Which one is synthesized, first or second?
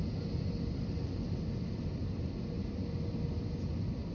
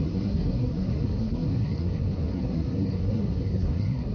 second